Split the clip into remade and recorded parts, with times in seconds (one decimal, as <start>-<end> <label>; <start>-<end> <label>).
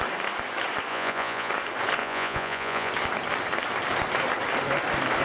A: 0.0-0.9 recorded; 0.9-1.5 remade; 1.5-2.0 recorded; 2.0-2.9 remade; 2.9-5.2 recorded